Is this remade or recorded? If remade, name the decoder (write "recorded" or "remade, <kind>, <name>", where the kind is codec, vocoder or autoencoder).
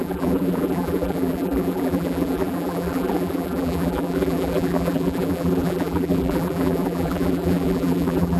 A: remade, vocoder, BigVGAN v2